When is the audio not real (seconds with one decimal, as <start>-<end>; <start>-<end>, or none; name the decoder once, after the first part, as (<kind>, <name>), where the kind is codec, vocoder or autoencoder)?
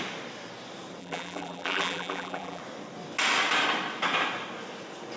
1.0-2.6 (vocoder, BigVGAN v2)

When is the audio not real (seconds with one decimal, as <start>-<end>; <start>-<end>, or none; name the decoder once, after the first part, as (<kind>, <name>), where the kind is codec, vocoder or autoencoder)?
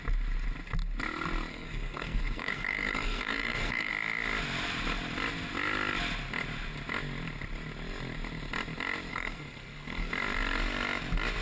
1.5-3.9 (codec, SNAC); 9.1-10.1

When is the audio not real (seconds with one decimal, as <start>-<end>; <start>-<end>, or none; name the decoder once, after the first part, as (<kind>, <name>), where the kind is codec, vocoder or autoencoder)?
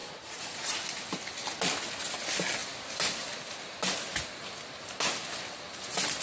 0.0-0.8 (vocoder, Vocos)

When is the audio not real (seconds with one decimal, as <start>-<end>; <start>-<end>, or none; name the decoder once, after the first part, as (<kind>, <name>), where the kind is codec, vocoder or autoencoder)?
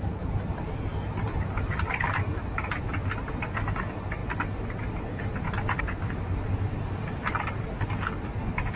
0.9-2.5 (vocoder, BigVGAN v2); 7.0-7.6